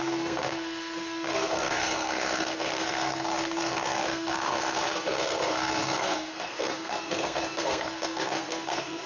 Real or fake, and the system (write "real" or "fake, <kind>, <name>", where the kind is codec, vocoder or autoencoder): fake, codec, SNAC